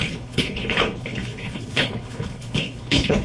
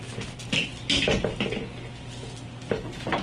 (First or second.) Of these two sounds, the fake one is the first